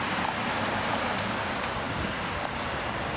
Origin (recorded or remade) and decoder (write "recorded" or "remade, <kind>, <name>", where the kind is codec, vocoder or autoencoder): recorded